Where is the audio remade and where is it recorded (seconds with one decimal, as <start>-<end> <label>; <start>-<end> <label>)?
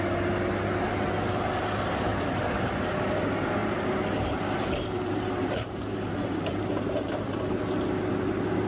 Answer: 0.0-2.1 recorded; 2.1-3.0 remade; 3.0-3.6 recorded; 3.6-7.6 remade; 7.6-8.7 recorded